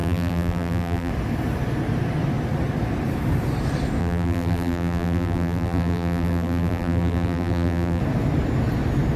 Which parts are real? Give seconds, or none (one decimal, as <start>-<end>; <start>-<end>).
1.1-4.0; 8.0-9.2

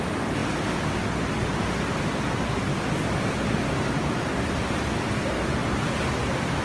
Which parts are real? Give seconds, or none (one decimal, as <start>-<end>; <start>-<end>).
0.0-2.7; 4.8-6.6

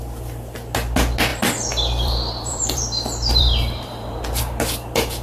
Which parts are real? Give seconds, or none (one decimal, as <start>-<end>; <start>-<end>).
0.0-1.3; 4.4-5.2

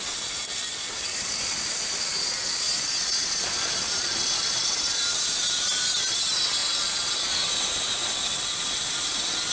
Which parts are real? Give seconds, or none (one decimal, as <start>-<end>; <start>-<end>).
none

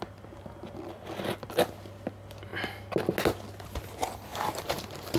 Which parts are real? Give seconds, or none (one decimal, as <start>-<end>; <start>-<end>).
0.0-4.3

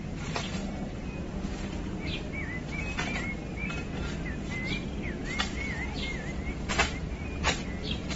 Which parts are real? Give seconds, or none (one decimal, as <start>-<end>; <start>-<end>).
0.0-8.2

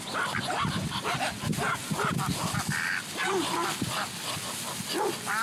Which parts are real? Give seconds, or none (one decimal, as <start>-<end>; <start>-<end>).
0.0-5.4

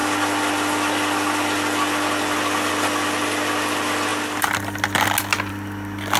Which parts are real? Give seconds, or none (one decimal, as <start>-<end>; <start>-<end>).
0.0-6.2